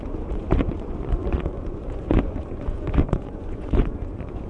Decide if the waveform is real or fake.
fake